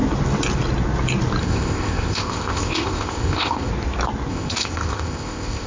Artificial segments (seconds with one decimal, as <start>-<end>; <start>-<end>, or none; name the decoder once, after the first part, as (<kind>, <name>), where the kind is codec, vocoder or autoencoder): 1.4-3.7 (codec, ZipCodec); 4.3-5.7